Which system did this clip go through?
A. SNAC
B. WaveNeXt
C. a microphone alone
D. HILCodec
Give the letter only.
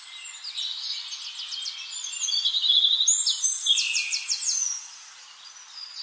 C